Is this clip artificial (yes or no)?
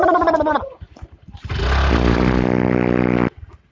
no